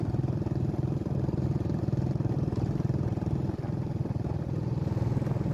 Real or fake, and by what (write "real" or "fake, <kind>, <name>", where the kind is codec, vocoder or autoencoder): real